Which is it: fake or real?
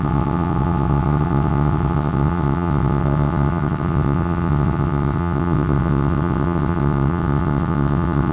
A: fake